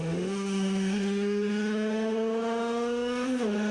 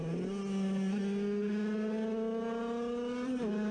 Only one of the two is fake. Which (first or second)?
first